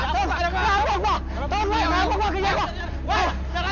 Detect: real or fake real